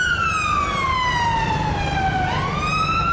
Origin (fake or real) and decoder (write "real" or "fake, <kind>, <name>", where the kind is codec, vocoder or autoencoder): real